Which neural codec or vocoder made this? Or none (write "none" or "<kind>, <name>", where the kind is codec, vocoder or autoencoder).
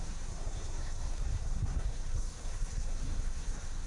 codec, SNAC